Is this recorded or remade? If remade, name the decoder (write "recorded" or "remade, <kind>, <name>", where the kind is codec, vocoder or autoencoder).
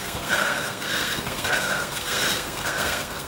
remade, codec, SNAC